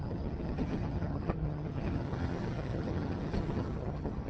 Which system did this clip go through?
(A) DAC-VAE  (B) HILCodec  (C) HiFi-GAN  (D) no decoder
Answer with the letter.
C